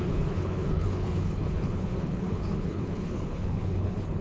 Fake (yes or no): yes